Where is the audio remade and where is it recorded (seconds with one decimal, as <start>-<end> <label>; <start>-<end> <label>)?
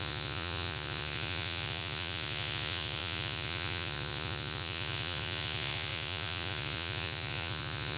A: 0.0-8.0 remade